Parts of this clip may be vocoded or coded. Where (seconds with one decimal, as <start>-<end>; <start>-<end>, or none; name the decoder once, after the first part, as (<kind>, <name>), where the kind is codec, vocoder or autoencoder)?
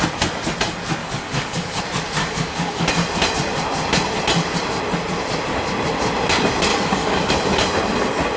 1.0-1.8 (codec, DAC); 2.2-2.9; 6.7-7.3